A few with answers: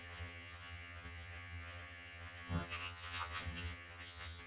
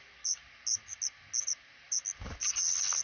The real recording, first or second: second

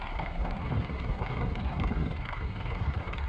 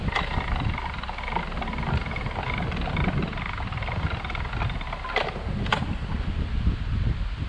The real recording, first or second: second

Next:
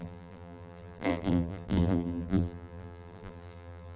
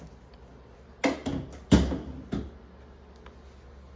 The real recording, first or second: second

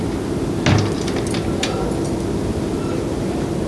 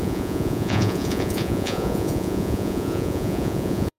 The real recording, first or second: first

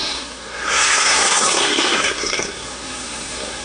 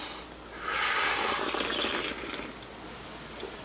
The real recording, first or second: second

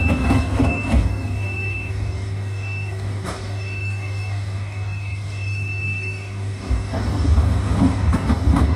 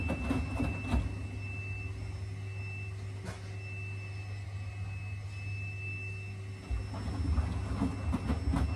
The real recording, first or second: second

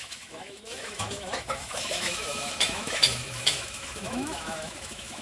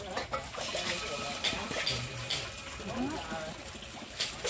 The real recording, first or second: second